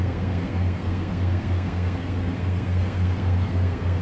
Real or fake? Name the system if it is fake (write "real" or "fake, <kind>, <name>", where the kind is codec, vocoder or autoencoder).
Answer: fake, codec, SNAC